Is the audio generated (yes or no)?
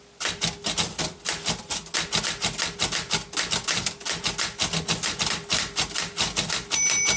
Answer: no